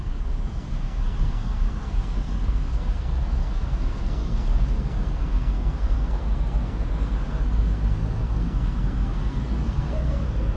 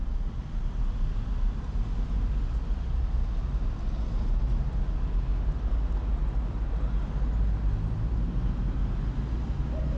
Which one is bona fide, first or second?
second